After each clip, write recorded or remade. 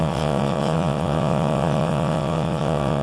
remade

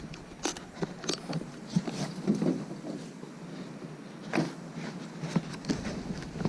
recorded